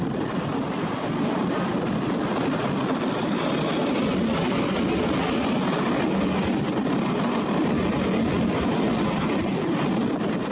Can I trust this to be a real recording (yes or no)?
yes